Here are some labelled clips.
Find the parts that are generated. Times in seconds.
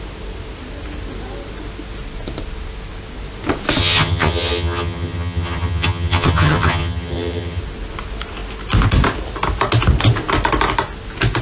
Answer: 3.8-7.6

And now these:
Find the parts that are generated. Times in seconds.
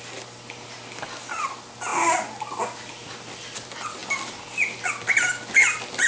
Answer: none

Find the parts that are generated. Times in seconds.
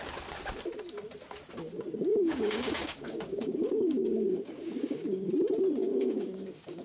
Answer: 2.1-5.3; 5.8-6.8